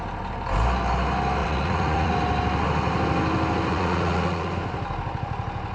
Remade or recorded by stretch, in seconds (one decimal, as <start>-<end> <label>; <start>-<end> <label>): 0.0-1.4 recorded; 1.4-2.1 remade; 2.1-3.7 recorded; 3.7-4.5 remade; 4.5-5.7 recorded